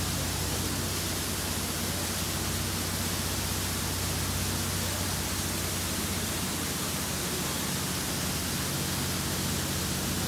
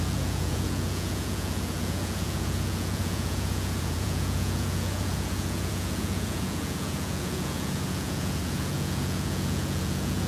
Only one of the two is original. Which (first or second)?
first